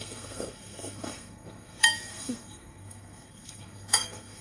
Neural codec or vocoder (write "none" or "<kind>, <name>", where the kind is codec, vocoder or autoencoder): codec, SNAC